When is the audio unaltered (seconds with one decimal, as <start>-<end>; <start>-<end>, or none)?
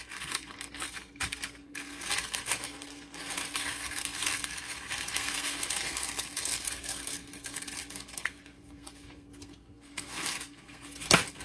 none